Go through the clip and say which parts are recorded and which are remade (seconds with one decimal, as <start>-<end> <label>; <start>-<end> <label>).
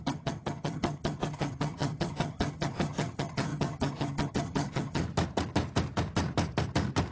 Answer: 0.0-5.0 remade; 5.0-7.1 recorded